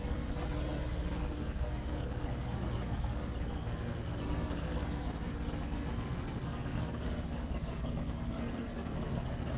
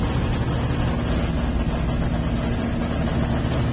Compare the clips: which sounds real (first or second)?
second